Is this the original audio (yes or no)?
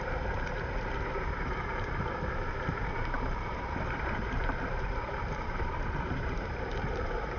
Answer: no